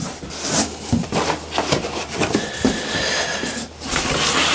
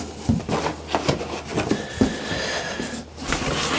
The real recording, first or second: second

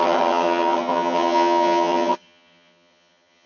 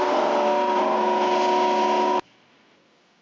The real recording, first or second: second